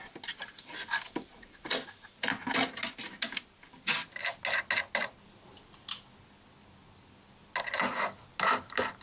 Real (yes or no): yes